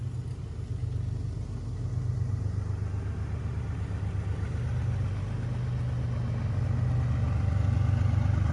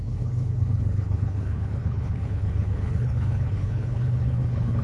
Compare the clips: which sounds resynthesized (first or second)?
second